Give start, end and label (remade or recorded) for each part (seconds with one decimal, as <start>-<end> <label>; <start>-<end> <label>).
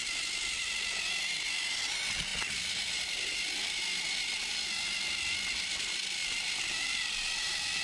0.0-6.2 recorded; 6.2-7.3 remade; 7.3-7.8 recorded